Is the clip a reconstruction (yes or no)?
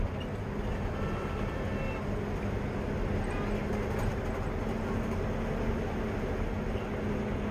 no